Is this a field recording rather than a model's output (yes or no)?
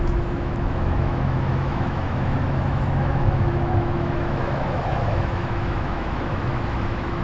no